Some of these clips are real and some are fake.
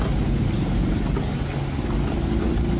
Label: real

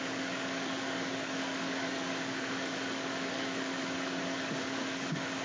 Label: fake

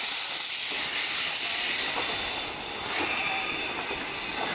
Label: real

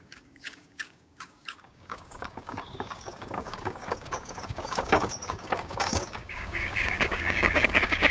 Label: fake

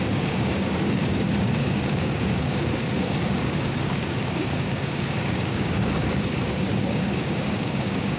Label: fake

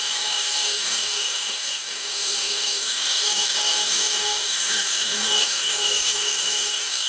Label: fake